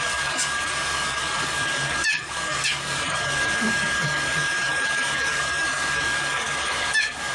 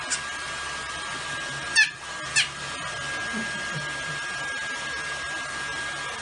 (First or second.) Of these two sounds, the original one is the second